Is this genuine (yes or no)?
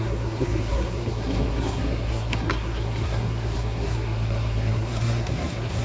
no